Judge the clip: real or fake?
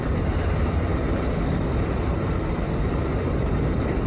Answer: real